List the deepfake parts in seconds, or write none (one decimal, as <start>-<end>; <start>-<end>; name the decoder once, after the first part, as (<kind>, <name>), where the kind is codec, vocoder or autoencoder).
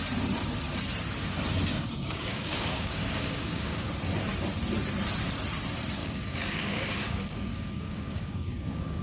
1.7-3.9 (codec, DAC); 6.0-9.0